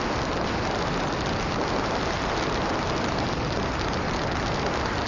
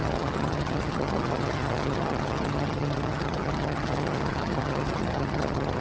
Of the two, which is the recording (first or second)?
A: first